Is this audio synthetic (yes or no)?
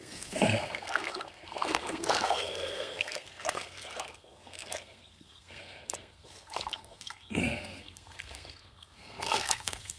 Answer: yes